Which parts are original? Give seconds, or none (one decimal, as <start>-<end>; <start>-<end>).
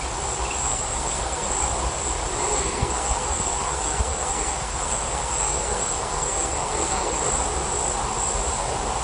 0.0-0.7; 1.5-2.5; 7.2-9.0